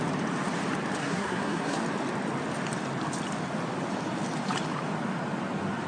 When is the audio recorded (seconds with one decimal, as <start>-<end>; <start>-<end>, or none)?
0.0-1.0; 1.8-5.9